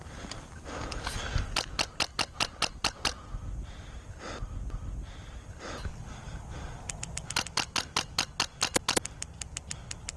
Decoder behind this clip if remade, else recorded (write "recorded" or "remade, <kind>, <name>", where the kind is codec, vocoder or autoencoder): recorded